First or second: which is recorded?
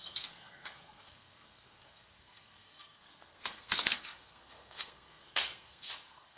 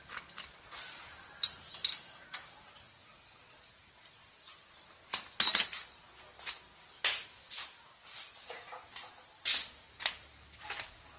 second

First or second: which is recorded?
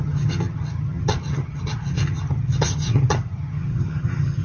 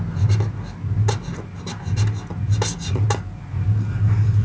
second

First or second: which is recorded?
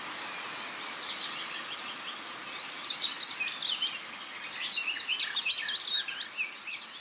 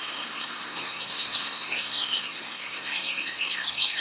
first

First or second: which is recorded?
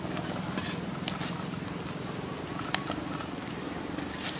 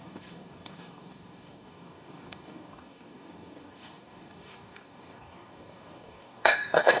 first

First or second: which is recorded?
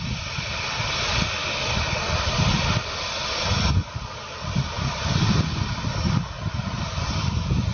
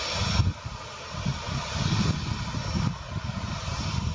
second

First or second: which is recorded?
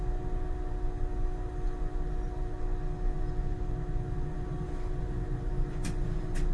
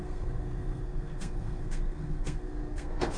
first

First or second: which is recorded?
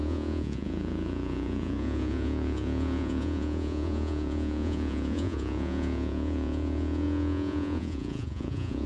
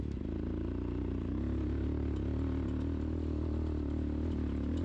second